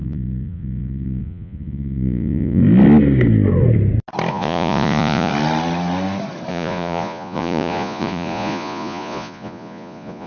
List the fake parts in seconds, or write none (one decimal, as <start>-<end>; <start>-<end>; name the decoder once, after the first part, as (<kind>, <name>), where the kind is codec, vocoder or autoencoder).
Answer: 0.0-2.6 (vocoder, Vocos); 4.3-5.3; 6.5-10.3